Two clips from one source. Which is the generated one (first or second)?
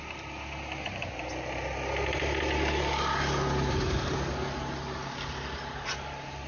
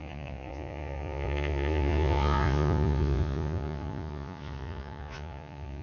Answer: second